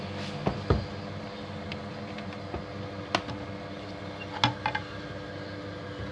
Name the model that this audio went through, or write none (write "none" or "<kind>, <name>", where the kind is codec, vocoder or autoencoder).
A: none